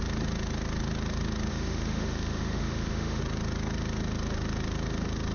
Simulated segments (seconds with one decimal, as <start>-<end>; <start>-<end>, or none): 1.5-3.2